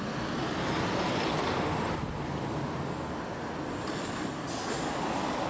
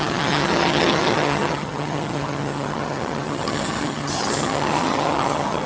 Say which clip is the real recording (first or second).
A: first